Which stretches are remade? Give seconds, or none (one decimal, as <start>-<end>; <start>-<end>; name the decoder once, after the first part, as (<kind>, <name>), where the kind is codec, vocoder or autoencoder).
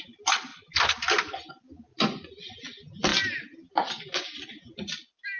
3.1-4.1 (vocoder, BigVGAN v2)